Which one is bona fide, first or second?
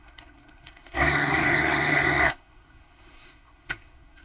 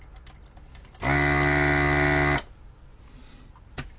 second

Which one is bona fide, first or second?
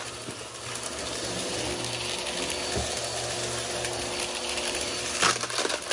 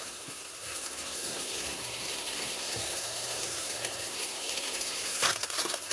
first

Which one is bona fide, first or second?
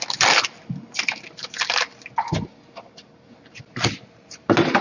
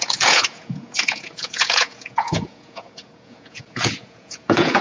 first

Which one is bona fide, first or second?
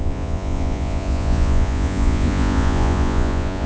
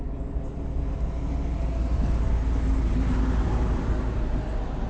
second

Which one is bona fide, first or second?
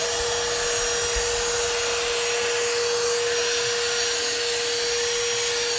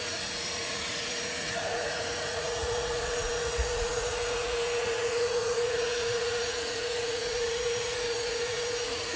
first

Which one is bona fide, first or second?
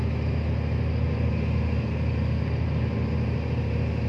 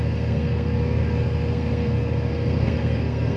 first